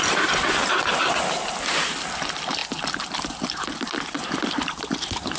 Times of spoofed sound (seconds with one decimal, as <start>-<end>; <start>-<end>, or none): none